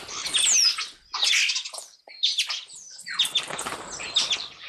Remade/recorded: recorded